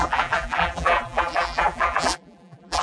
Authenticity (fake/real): fake